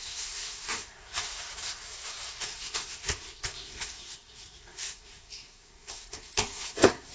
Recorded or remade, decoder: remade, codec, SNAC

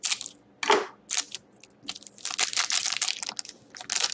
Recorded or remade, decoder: recorded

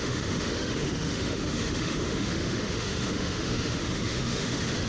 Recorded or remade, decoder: remade, autoencoder, DAC-VAE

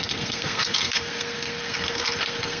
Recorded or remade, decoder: remade, codec, SNAC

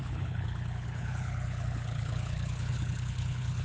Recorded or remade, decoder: remade, codec, HILCodec